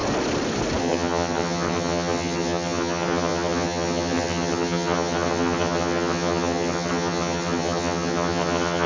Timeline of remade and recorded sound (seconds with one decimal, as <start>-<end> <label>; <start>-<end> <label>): 0.0-0.8 recorded; 0.8-8.9 remade